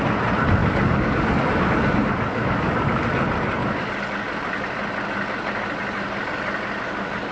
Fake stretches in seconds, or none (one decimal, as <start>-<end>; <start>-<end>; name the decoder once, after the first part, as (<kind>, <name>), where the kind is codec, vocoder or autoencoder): 0.6-3.1 (codec, DAC)